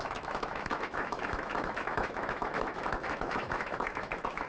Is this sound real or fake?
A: fake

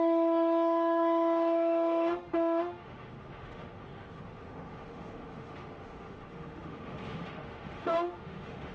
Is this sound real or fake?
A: fake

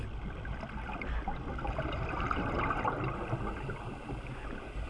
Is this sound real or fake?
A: real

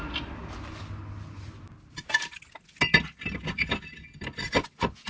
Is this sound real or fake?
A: real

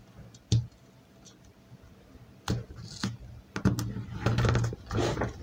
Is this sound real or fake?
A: real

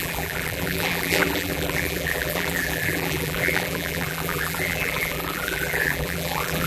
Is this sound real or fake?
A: fake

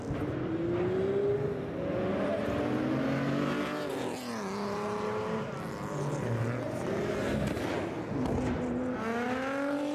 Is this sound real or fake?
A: real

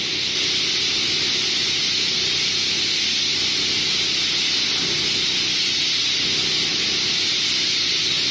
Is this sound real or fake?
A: real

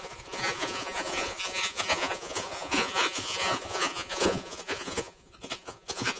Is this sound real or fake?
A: fake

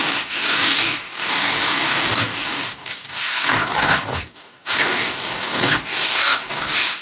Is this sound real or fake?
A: fake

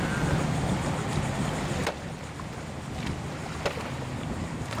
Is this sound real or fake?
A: real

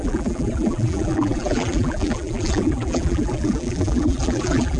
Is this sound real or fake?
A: fake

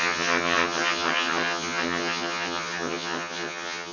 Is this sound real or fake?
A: fake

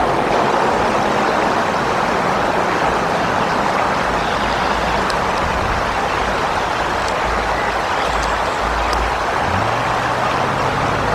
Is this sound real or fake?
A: real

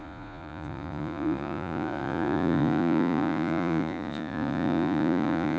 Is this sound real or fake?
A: fake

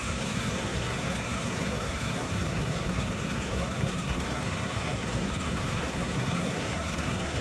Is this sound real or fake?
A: fake